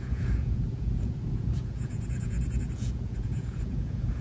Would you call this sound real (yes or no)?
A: no